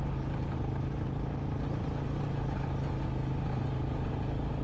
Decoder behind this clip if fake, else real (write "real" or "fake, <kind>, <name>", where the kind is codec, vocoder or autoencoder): real